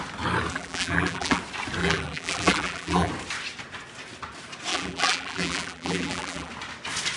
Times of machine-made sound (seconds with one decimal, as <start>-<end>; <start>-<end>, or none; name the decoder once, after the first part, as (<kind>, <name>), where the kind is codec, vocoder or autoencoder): 0.5-1.4 (vocoder, BigVGAN v2); 1.8-3.1; 4.7-6.5